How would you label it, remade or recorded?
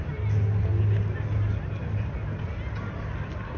recorded